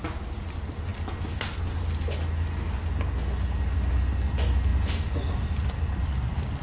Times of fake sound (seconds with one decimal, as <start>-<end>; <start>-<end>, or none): none